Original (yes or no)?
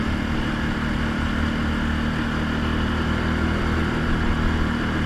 yes